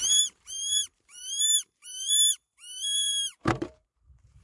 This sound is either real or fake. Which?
fake